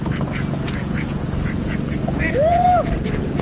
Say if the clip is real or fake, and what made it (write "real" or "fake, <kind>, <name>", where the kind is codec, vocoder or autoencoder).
fake, vocoder, Vocos